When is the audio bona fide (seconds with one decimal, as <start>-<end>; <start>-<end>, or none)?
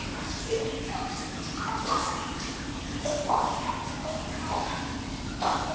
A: 0.0-2.0; 3.7-5.7